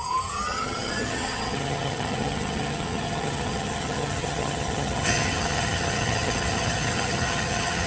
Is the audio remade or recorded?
remade